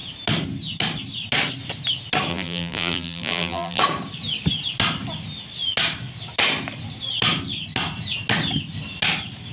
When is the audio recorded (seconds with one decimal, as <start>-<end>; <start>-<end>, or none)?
0.0-2.3; 3.8-9.5